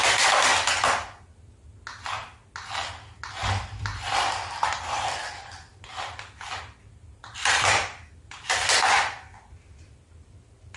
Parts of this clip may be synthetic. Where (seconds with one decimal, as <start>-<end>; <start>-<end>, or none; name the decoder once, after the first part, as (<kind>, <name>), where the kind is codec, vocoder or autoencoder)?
0.0-0.5 (vocoder, BigVGAN v2); 3.3-3.9; 5.3-10.8